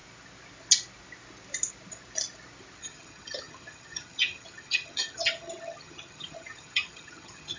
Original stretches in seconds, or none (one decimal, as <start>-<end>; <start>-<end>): 0.0-2.8

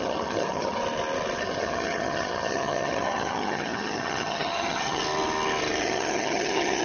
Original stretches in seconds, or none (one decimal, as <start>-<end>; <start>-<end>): 0.8-1.4; 5.0-5.8